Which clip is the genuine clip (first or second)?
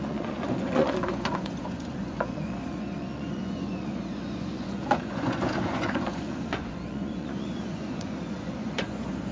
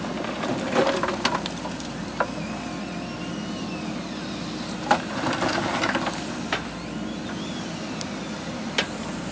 second